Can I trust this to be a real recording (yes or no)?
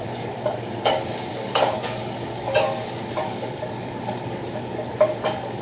no